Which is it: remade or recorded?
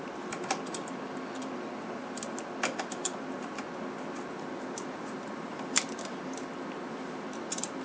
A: recorded